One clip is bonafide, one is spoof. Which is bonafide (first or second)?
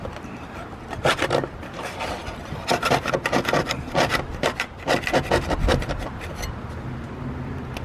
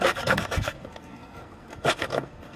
first